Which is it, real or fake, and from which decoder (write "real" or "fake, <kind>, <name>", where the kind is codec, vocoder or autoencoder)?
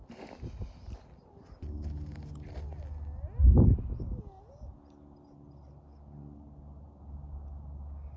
real